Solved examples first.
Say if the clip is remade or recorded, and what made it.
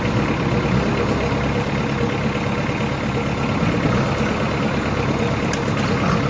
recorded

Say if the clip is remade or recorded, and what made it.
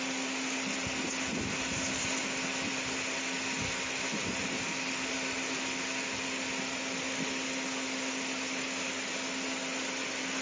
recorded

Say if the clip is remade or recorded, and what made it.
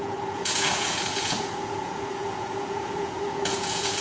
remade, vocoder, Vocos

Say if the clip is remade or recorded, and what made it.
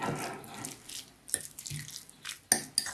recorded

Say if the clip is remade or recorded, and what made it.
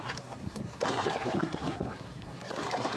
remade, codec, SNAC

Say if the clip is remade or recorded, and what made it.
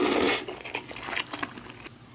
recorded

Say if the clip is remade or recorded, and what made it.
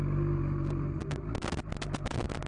recorded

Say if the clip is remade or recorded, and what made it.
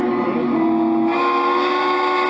recorded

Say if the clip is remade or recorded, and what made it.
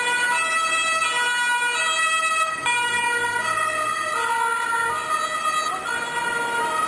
recorded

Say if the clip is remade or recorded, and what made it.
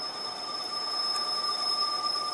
recorded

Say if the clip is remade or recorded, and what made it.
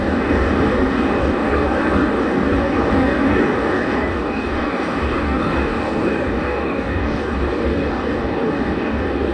remade, codec, DAC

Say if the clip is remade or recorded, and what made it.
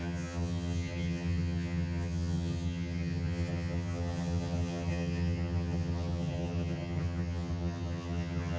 remade, vocoder, HiFi-GAN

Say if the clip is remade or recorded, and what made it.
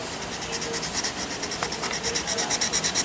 recorded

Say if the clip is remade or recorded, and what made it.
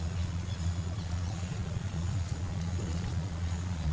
remade, vocoder, Vocos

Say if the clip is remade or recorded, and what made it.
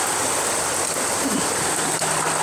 recorded